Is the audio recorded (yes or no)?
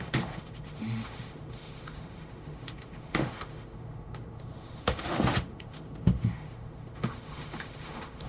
no